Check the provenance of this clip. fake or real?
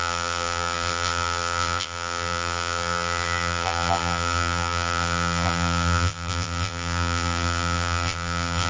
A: fake